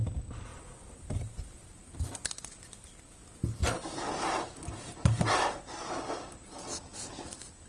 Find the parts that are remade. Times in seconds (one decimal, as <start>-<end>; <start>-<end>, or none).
0.5-2.1; 3.6-6.0